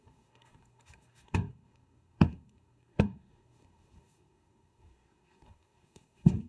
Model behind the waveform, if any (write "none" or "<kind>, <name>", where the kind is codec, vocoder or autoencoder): codec, SNAC